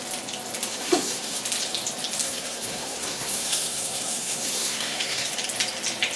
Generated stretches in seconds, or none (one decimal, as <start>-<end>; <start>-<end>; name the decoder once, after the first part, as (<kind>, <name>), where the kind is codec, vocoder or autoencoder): 0.7-1.4 (codec, SNAC); 2.2-5.3